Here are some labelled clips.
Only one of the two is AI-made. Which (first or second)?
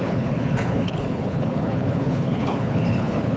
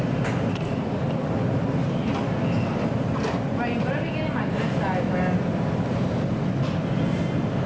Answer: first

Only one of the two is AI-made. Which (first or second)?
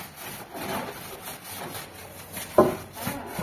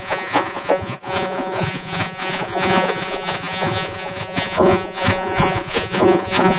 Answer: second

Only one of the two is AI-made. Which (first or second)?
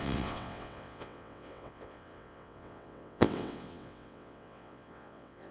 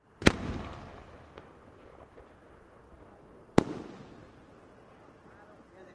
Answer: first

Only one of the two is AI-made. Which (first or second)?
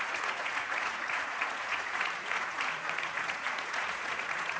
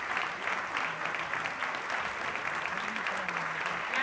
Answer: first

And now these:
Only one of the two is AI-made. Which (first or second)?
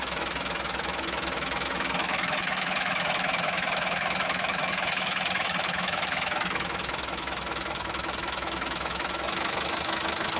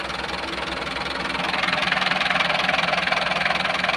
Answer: first